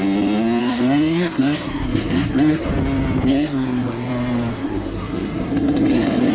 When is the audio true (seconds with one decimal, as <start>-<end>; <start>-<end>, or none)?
0.0-0.6; 2.7-3.3; 4.1-4.5